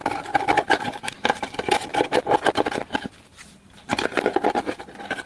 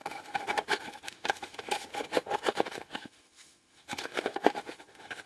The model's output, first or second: second